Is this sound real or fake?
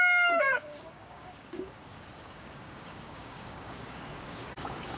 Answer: fake